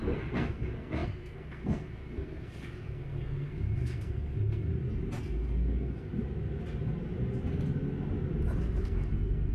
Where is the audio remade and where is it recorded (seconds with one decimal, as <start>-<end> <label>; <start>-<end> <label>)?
0.0-4.7 remade; 4.7-5.2 recorded; 5.2-6.1 remade; 6.1-8.8 recorded; 8.8-9.5 remade

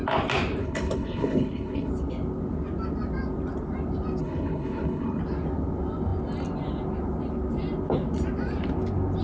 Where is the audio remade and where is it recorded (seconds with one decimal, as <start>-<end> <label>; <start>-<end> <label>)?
0.0-0.6 recorded; 0.6-1.9 remade; 1.9-4.2 recorded; 4.2-5.2 remade; 5.2-9.2 recorded

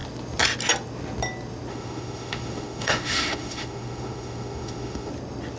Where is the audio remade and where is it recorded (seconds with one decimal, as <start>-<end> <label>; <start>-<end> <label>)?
0.0-1.7 recorded; 1.7-5.1 remade; 5.1-5.6 recorded

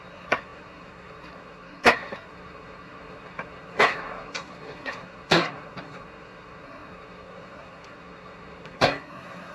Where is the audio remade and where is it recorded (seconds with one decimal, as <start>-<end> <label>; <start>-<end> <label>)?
0.0-9.5 remade

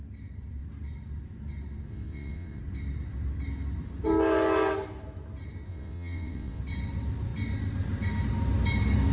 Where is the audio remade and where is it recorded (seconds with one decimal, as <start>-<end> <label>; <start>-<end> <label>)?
0.0-1.9 recorded; 1.9-2.6 remade; 2.6-5.7 recorded; 5.7-6.6 remade; 6.6-9.1 recorded